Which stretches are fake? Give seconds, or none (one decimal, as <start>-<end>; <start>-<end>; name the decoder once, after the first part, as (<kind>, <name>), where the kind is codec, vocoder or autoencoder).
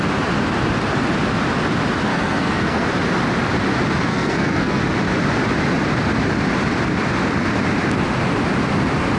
2.1-2.9 (codec, SNAC); 4.1-4.8